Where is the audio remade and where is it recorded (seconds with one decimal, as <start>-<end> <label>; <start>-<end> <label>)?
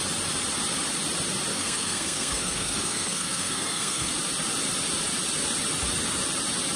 0.0-1.5 recorded; 1.5-4.1 remade; 4.1-6.8 recorded